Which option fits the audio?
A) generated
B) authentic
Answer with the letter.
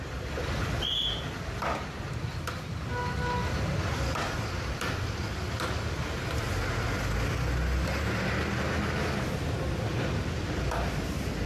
B